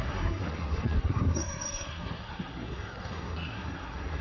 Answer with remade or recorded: remade